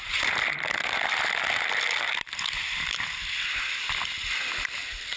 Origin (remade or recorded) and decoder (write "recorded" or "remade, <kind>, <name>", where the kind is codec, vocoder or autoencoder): recorded